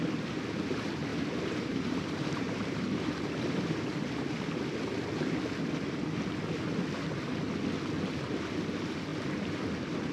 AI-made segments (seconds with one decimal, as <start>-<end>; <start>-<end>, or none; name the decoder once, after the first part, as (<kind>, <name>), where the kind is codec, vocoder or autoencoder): 1.1-3.2 (vocoder, BigVGAN v2)